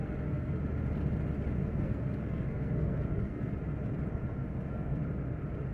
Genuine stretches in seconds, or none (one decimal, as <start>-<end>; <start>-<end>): 0.6-1.6; 3.5-4.1; 5.0-5.7

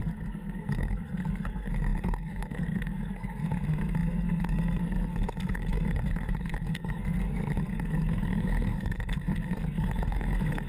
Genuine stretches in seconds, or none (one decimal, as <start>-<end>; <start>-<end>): none

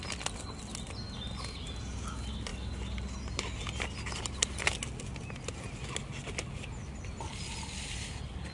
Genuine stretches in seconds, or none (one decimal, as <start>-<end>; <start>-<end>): 0.0-8.5